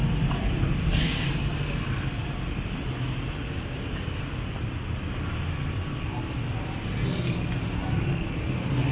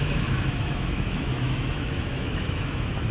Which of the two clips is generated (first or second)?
second